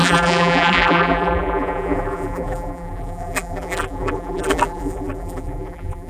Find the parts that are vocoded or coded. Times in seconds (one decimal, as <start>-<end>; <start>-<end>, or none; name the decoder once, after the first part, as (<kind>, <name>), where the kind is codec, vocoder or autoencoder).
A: 0.0-6.1 (vocoder, BigVGAN v2)

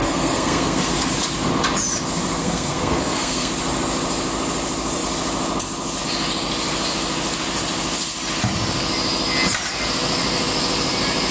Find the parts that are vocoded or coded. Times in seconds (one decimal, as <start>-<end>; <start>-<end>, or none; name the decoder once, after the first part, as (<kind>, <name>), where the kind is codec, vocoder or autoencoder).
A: 0.0-1.1 (codec, SNAC); 2.4-3.5

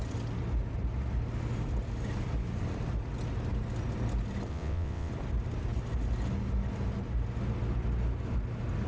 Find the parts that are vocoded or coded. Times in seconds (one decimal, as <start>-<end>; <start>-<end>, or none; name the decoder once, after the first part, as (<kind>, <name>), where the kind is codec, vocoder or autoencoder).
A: 4.5-5.1 (vocoder, WaveNeXt)

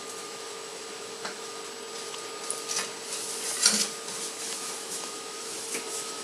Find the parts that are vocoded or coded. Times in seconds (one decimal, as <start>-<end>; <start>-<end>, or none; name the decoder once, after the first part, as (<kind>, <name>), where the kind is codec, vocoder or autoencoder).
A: 0.0-1.6 (autoencoder, DAC-VAE); 4.4-6.2

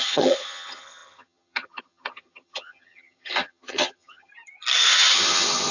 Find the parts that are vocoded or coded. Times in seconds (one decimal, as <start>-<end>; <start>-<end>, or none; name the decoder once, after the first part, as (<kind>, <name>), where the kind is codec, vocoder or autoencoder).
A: 0.0-4.3 (vocoder, HiFi-GAN); 4.9-5.7

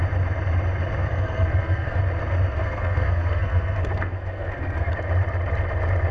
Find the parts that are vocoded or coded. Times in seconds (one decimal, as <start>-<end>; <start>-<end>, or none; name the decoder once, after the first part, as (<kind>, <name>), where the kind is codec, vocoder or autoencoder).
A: 1.0-2.0 (codec, SNAC); 2.6-4.9

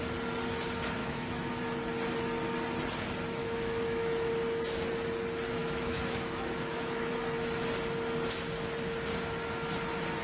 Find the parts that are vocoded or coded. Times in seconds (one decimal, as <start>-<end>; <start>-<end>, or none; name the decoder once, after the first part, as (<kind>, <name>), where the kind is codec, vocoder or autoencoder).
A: 1.0-1.6 (autoencoder, DAC-VAE); 3.4-4.3; 5.6-7.1